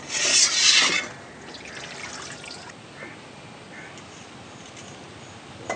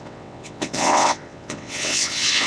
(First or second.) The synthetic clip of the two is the second